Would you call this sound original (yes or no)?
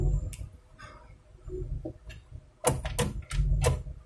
yes